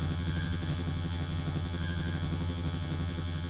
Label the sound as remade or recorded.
remade